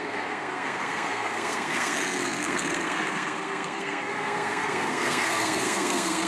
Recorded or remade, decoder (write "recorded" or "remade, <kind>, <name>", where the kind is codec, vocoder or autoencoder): remade, codec, SNAC